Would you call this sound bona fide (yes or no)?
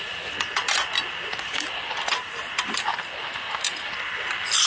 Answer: yes